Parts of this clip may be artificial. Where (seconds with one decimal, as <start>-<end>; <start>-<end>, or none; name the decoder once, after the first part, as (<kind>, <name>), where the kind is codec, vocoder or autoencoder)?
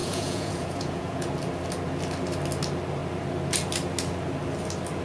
0.0-1.3 (vocoder, Vocos)